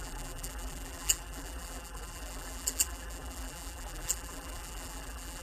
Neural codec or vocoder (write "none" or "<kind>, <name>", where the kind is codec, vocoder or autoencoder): vocoder, BigVGAN v2